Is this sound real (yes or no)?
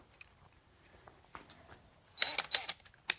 yes